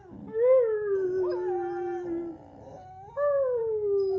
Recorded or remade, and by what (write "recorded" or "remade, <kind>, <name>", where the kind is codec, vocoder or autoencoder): recorded